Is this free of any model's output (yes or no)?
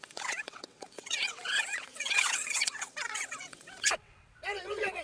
no